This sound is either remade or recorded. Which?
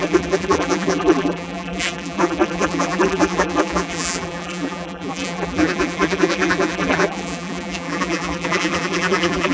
remade